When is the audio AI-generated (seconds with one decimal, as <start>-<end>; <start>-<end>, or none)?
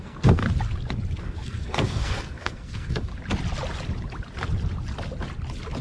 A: 0.0-0.4; 1.2-3.1